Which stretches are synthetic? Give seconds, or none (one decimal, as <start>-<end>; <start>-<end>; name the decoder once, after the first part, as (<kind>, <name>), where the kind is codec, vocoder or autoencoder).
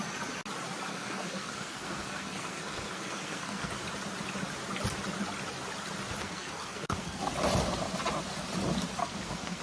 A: 0.9-3.7 (codec, SNAC); 6.2-7.2; 9.0-9.6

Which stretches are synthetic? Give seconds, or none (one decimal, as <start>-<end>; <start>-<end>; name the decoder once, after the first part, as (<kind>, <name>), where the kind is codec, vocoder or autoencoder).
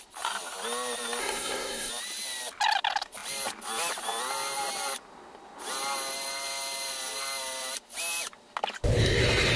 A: 1.2-1.9 (codec, SNAC)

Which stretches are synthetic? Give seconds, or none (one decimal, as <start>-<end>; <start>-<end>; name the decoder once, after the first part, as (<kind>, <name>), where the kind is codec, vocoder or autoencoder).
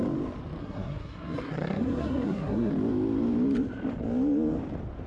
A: 0.6-2.7 (codec, SNAC)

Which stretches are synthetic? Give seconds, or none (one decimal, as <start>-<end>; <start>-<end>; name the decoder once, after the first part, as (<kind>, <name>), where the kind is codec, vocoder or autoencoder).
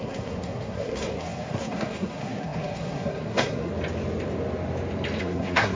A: 0.0-3.7 (codec, SNAC); 5.2-5.8